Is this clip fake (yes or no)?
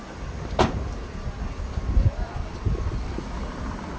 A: no